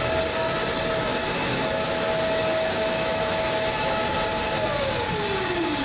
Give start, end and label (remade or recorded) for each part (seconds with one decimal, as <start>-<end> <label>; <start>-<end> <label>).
0.0-1.2 recorded; 1.2-4.0 remade; 4.0-5.8 recorded